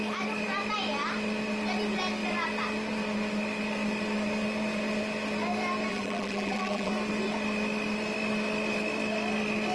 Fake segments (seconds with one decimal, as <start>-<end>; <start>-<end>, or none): 5.9-6.9